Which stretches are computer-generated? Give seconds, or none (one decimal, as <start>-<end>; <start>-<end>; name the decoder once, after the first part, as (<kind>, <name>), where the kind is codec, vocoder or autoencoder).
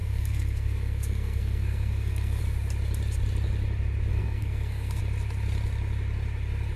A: 0.0-2.4 (codec, SNAC); 4.1-5.0